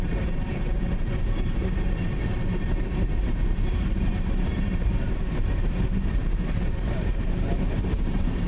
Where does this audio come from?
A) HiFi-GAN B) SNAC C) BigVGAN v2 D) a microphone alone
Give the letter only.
C